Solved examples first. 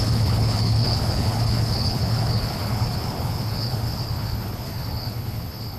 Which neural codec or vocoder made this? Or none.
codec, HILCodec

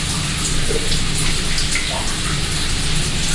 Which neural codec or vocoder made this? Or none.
none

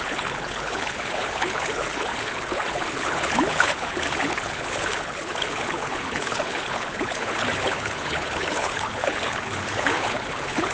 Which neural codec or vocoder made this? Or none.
codec, HILCodec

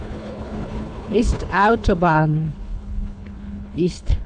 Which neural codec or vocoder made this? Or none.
codec, HILCodec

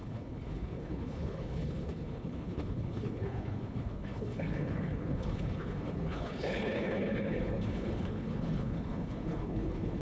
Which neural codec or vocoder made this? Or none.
codec, HILCodec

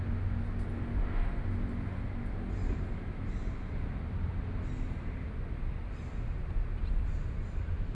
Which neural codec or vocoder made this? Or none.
none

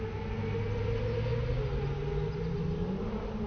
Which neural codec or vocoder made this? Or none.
none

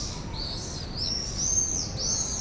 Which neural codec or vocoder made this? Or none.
none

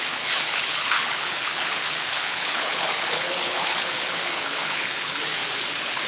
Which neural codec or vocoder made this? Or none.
codec, HILCodec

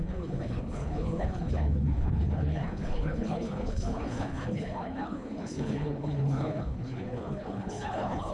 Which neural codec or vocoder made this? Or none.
codec, HILCodec